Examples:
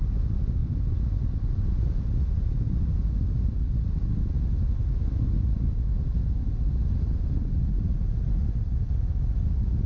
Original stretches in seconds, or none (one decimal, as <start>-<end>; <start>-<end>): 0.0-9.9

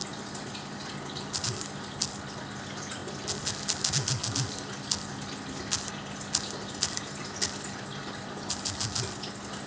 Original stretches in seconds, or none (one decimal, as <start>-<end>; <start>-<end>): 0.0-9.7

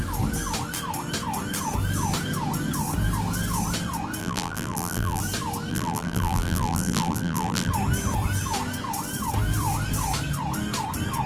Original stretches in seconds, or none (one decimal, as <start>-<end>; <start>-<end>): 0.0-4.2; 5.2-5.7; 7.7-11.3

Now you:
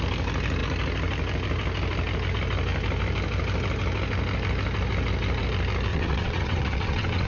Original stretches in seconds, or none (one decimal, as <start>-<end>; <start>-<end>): 0.0-5.9